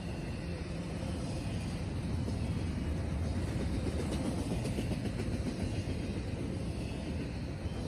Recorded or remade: recorded